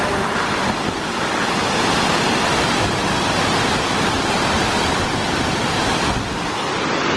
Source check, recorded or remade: recorded